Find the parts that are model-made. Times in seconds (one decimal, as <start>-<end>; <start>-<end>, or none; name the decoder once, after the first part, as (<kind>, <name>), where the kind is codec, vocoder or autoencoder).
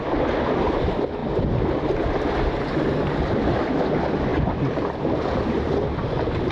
none